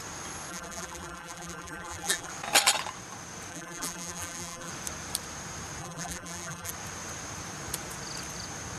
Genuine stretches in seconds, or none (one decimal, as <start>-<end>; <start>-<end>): 0.0-0.5; 2.3-3.5; 4.7-5.8; 6.7-8.8